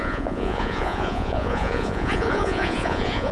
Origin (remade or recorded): remade